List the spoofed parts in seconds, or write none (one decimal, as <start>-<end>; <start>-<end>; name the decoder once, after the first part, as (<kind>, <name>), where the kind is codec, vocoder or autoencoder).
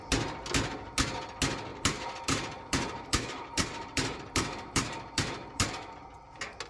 1.7-5.7 (vocoder, BigVGAN v2)